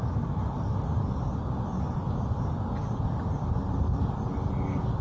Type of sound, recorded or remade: recorded